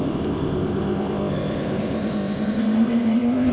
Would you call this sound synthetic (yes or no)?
yes